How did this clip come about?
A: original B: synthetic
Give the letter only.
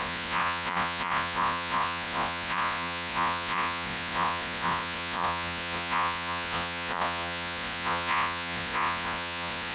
B